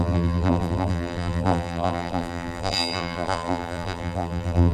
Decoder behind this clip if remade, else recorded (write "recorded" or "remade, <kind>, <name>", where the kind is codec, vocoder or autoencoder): remade, vocoder, BigVGAN v2